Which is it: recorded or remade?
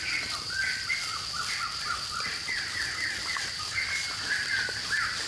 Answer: recorded